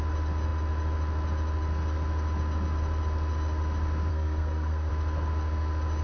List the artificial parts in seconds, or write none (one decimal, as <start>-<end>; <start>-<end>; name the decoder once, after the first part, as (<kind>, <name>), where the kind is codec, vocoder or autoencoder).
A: 4.1-4.9 (codec, SNAC)

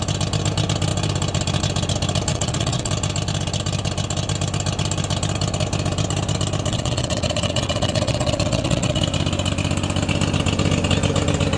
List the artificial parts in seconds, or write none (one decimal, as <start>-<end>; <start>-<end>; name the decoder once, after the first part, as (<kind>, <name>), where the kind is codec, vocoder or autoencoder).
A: 2.3-2.9 (vocoder, WaveNeXt); 6.7-9.0

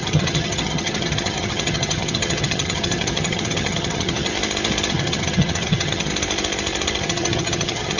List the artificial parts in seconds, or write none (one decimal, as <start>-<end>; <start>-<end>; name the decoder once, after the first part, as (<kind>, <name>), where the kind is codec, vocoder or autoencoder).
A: 0.0-4.3 (vocoder, HiFi-GAN); 4.9-6.1; 7.0-8.0